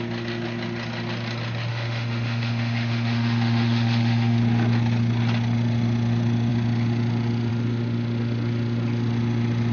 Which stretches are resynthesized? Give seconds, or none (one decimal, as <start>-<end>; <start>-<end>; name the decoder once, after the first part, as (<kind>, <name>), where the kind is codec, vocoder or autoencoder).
1.7-4.4 (autoencoder, DAC-VAE)